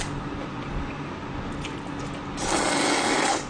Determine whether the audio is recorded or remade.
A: recorded